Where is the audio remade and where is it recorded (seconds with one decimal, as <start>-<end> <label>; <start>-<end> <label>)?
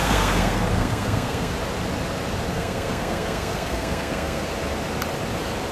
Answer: 0.0-1.5 remade; 1.5-2.5 recorded; 2.5-4.5 remade; 4.5-5.7 recorded